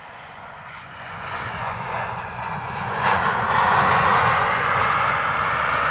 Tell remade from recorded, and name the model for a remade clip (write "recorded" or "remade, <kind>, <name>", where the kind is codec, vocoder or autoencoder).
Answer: remade, vocoder, Vocos